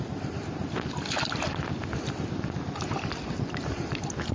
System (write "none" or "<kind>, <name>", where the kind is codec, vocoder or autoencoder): none